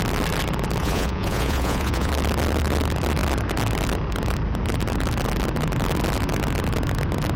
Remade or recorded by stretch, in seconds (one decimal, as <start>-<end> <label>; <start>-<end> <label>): 0.0-0.8 recorded; 0.8-2.1 remade; 2.1-7.4 recorded